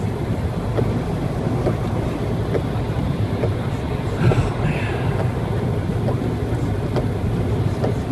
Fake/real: real